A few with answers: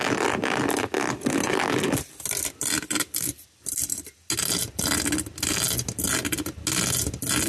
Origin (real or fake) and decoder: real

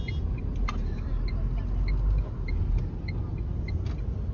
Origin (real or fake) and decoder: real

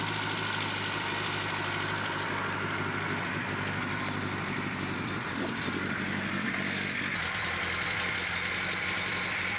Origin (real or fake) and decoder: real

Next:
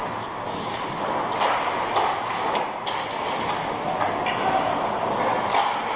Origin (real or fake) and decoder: real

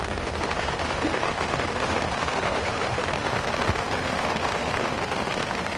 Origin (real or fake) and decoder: fake, autoencoder, DAC-VAE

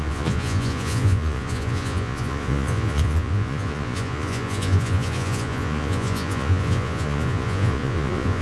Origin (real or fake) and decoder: fake, vocoder, Vocos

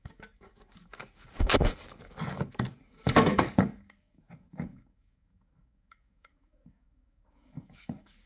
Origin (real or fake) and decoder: fake, codec, DAC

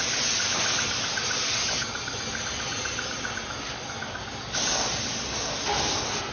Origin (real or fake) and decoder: real